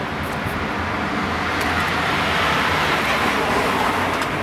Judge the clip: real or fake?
real